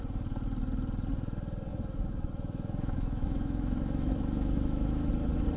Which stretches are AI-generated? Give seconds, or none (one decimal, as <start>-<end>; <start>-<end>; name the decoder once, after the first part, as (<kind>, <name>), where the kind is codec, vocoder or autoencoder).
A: 1.7-5.1 (autoencoder, DAC-VAE)